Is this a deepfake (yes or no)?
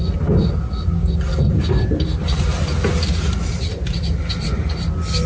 no